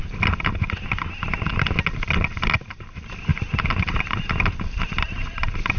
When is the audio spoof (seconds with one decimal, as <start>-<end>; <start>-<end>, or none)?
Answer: none